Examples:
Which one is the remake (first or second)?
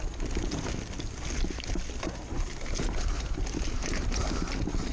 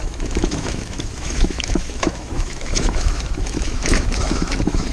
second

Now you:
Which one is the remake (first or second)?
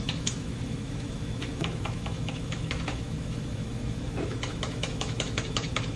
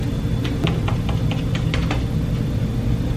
first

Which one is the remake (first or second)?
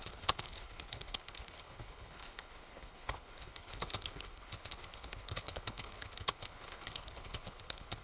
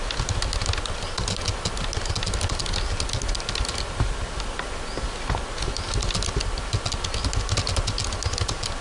first